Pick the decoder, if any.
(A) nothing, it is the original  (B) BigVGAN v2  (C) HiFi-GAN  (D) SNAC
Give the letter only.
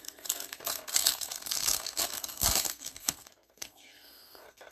D